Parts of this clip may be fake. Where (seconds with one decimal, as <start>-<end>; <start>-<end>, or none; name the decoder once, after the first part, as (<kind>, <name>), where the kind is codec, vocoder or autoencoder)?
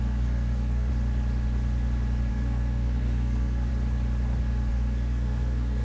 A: 0.0-0.9 (codec, SNAC); 2.3-3.7; 4.7-5.8